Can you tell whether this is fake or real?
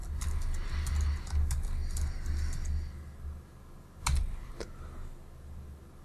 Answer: real